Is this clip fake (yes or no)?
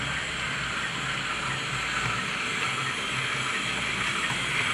no